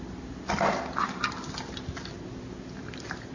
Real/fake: real